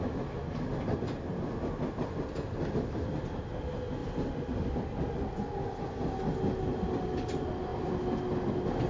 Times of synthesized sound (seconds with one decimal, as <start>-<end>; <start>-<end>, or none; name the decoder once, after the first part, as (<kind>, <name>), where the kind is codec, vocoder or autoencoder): 4.0-5.1 (vocoder, BigVGAN v2); 7.7-8.5